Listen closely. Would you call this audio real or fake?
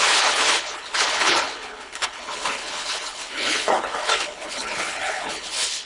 fake